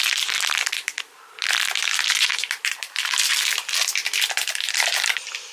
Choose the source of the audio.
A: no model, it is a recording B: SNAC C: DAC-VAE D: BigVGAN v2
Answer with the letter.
D